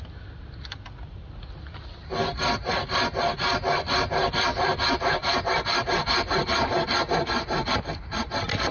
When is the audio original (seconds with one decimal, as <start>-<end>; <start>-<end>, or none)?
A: 0.0-5.2; 7.8-8.7